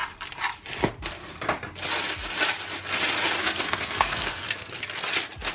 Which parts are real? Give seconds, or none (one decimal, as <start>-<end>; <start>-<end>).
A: 0.0-3.4; 4.7-5.5